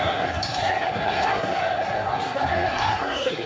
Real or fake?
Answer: fake